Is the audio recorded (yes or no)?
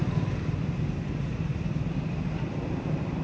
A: no